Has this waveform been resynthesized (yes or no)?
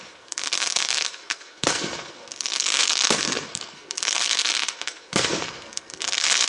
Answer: yes